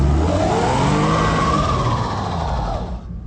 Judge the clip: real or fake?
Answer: real